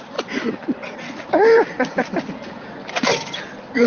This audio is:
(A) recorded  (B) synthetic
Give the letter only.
A